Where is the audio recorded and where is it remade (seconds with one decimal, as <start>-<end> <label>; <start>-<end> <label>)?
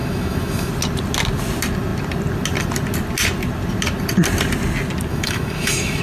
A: 0.0-0.7 remade; 0.7-5.1 recorded; 5.1-6.0 remade